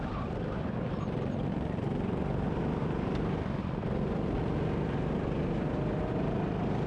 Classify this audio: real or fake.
real